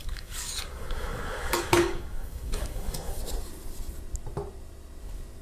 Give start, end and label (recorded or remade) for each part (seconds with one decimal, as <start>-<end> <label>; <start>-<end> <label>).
0.0-3.2 remade; 3.2-5.4 recorded